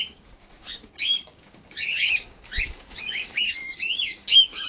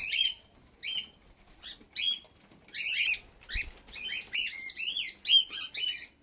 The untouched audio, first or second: second